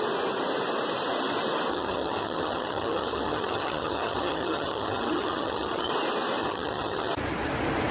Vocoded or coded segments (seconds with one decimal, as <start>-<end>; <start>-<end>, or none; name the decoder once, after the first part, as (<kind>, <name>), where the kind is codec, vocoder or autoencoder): 1.7-5.9 (vocoder, HiFi-GAN); 6.4-7.1